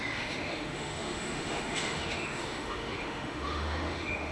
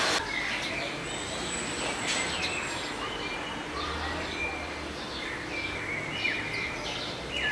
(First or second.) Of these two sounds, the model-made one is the first